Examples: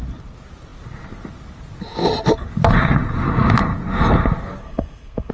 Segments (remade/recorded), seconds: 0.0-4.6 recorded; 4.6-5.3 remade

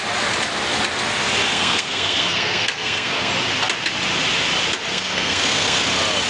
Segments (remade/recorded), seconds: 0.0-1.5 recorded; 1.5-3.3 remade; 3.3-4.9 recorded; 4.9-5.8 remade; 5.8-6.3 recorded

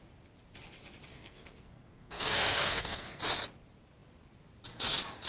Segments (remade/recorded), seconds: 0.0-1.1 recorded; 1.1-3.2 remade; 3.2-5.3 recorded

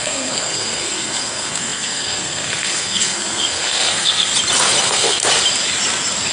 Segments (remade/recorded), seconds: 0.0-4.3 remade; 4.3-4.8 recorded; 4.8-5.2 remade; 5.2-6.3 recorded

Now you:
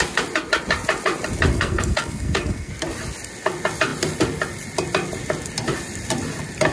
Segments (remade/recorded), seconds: 0.0-1.5 recorded; 1.5-2.7 remade; 2.7-6.7 recorded

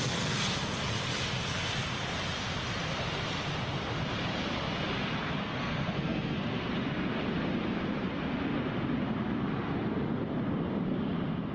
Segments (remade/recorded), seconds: 0.0-5.4 recorded; 5.4-6.7 remade; 6.7-11.5 recorded

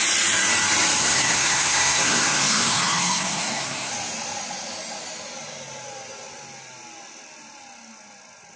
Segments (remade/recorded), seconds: 0.0-1.0 recorded; 1.0-3.9 remade; 3.9-8.6 recorded